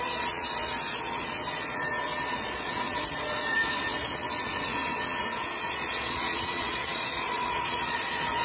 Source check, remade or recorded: remade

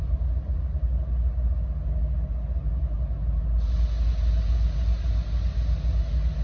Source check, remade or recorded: recorded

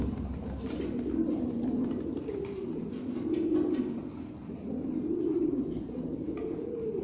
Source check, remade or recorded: recorded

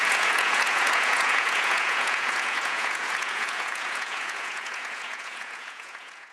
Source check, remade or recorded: remade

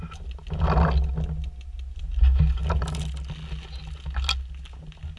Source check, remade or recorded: recorded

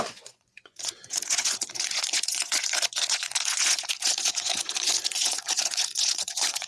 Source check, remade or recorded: remade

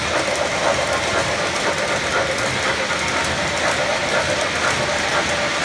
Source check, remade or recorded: recorded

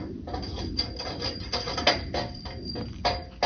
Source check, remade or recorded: recorded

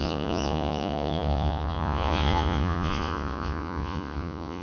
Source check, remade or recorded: remade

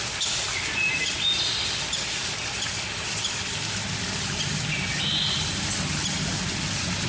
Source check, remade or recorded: recorded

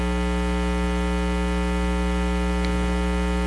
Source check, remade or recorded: recorded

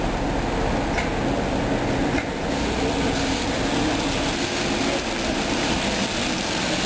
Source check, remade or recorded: recorded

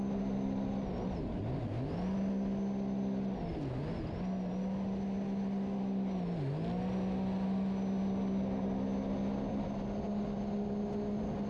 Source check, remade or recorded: recorded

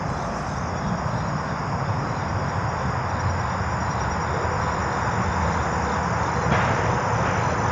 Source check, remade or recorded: recorded